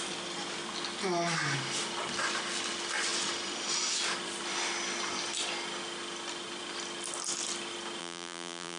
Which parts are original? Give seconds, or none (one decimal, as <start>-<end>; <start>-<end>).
0.0-8.0